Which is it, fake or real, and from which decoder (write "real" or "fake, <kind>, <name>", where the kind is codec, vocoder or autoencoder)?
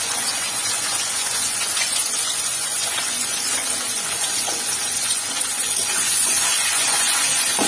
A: fake, vocoder, Vocos